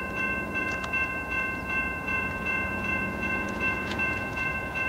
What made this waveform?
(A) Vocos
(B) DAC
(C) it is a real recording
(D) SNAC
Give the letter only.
A